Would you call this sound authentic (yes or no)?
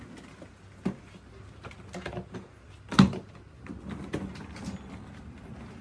yes